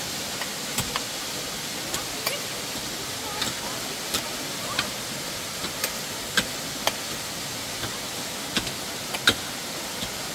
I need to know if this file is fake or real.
real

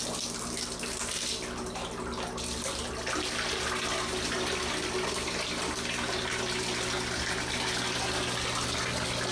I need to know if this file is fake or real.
real